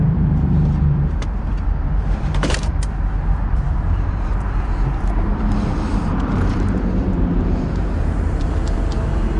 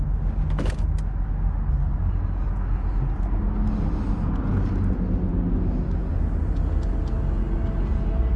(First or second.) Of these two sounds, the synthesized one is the first